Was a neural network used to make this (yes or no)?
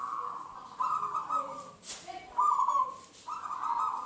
no